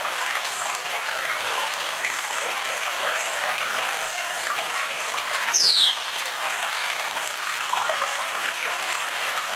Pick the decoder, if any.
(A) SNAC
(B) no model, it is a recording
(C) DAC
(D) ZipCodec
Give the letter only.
C